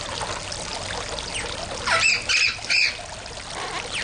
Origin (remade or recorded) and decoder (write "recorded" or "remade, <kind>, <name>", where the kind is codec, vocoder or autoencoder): recorded